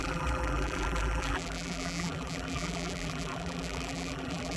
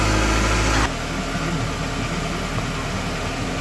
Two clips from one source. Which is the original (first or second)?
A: second